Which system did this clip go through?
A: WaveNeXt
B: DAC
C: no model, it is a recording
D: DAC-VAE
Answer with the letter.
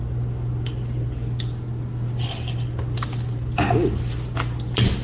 C